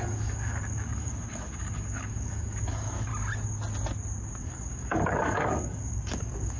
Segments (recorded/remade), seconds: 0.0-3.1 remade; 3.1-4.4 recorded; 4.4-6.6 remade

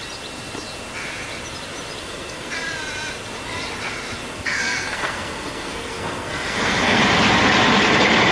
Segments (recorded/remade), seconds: 0.0-2.0 recorded; 2.0-2.5 remade; 2.5-4.3 recorded; 4.3-7.0 remade; 7.0-8.3 recorded

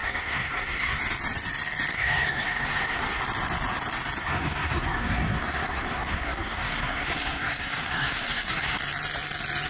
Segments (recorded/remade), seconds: 0.0-1.0 remade; 1.0-1.9 recorded; 1.9-3.2 remade; 3.2-4.2 recorded; 4.2-8.8 remade; 8.8-9.7 recorded

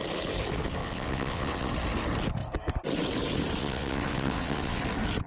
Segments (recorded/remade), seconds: 0.0-0.8 recorded; 0.8-1.7 remade; 1.7-3.6 recorded; 3.6-4.8 remade; 4.8-5.3 recorded